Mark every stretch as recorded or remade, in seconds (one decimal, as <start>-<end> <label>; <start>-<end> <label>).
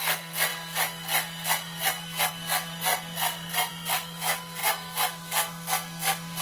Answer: 0.0-6.4 remade